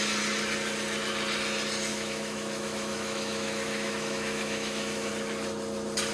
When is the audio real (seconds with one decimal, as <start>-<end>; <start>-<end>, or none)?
0.0-1.9; 5.1-6.1